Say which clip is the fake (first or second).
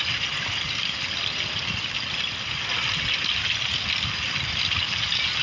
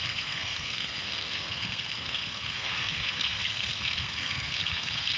second